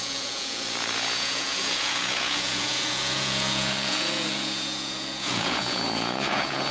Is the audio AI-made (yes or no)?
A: yes